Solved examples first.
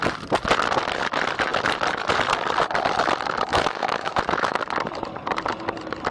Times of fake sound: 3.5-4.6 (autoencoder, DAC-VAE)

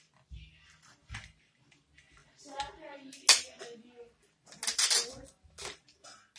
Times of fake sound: none

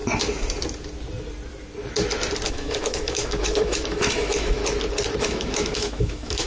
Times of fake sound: 2.5-4.6 (autoencoder, DAC-VAE); 5.2-6.5

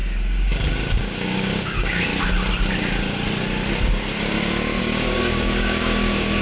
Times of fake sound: 0.9-2.1 (codec, DAC); 4.8-6.4

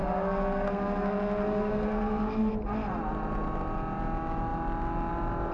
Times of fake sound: 0.0-2.5 (codec, SNAC)